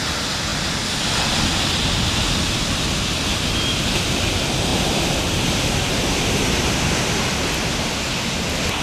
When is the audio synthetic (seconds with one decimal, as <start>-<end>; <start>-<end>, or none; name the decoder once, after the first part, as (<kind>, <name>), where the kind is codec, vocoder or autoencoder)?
none